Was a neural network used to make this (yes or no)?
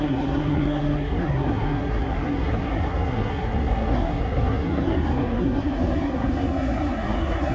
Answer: yes